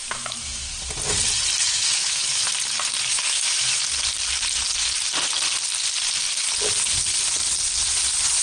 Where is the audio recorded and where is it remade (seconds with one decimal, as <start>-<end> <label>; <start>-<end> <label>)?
0.0-0.6 remade; 0.6-1.6 recorded; 1.6-2.5 remade; 2.5-3.1 recorded; 3.1-3.8 remade; 3.8-8.4 recorded